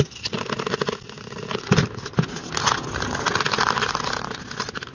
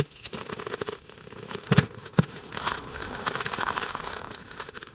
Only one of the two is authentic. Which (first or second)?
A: first